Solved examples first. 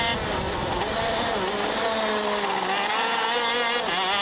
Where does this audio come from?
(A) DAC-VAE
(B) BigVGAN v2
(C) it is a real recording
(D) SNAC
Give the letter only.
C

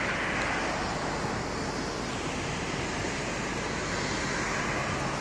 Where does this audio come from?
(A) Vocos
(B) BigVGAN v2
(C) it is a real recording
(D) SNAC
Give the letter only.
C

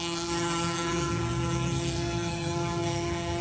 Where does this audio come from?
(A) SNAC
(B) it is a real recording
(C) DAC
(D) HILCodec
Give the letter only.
A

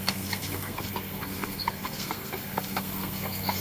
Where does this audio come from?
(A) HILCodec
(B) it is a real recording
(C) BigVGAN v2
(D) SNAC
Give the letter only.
D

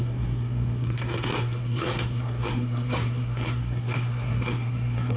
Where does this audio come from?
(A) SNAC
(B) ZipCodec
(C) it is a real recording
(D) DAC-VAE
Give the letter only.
A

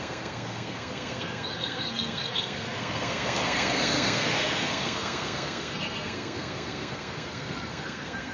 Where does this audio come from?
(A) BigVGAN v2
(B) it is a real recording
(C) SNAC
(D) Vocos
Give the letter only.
C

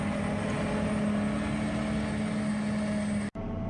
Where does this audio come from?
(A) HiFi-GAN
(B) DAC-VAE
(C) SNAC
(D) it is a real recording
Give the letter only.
D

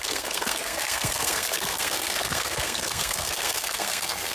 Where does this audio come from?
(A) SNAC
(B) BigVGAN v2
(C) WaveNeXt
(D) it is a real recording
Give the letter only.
A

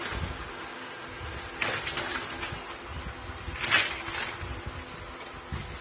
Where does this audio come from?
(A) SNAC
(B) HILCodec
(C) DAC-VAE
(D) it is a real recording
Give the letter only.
D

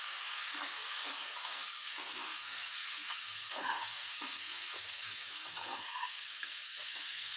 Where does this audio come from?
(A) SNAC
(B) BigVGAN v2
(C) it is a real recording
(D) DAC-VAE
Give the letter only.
A